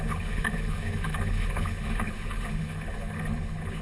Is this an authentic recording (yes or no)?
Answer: no